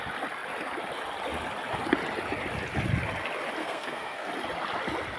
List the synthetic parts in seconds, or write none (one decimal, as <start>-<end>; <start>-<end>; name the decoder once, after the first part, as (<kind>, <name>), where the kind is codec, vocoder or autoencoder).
3.6-4.3 (codec, SNAC)